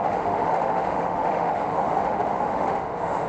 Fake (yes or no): yes